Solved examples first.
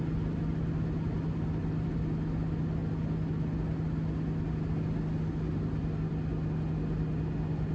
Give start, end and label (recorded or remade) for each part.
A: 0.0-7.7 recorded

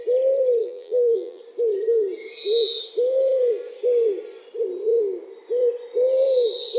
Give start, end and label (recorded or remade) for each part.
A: 0.0-0.6 recorded; 0.6-1.4 remade; 1.4-6.8 recorded

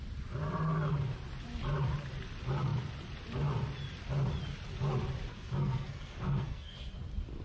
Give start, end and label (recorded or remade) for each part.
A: 0.0-5.3 recorded; 5.3-6.9 remade; 6.9-7.4 recorded